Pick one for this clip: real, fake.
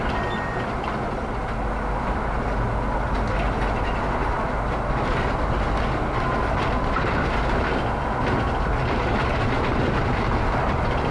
real